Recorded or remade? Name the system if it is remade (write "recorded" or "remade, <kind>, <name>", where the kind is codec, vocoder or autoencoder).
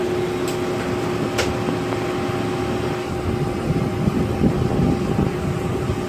recorded